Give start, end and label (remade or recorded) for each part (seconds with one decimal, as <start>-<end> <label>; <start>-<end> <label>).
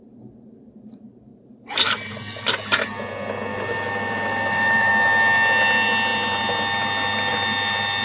0.0-1.3 recorded; 1.3-2.1 remade; 2.1-3.5 recorded; 3.5-4.9 remade; 4.9-8.0 recorded